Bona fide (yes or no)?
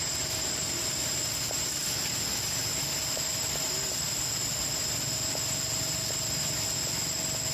yes